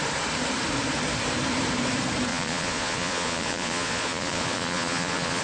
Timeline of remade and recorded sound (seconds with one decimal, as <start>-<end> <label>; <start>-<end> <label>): 0.0-2.3 recorded; 2.3-5.4 remade